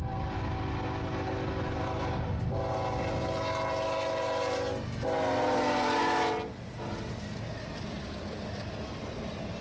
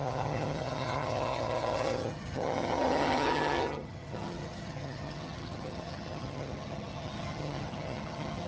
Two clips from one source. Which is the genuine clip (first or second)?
first